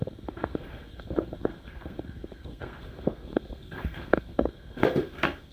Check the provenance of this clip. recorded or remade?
remade